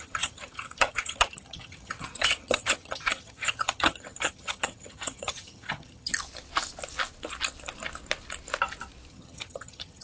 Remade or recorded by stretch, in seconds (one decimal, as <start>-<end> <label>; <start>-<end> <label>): 0.0-6.1 remade; 6.1-9.1 recorded; 9.1-10.0 remade